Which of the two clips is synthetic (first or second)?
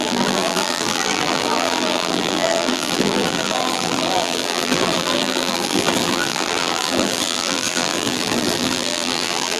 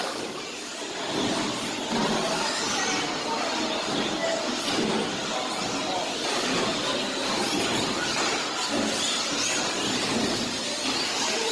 first